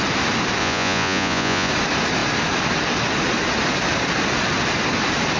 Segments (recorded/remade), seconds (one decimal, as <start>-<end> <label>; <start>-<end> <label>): 0.0-0.6 recorded; 0.6-1.7 remade; 1.7-5.4 recorded